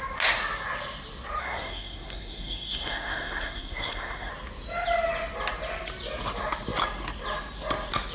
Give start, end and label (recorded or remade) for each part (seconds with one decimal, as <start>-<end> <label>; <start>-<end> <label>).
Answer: 0.0-1.4 recorded; 1.4-4.3 remade; 4.3-8.1 recorded